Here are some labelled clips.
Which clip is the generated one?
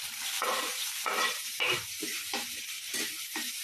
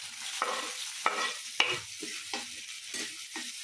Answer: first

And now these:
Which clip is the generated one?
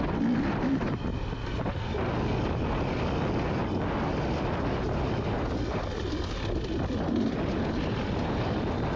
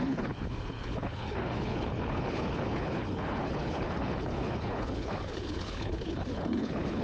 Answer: second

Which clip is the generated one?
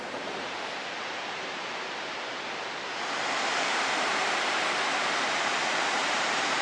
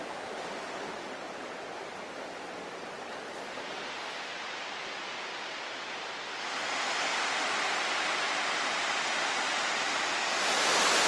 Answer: first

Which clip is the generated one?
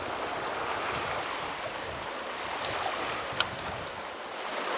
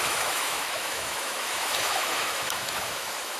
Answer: second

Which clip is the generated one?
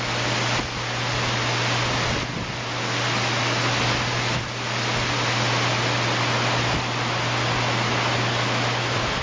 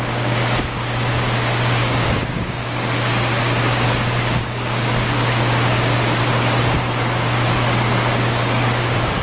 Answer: second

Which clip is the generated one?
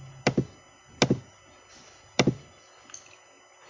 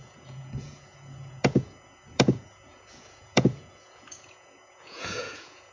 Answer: second